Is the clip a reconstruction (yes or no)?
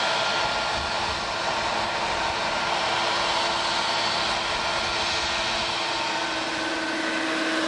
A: no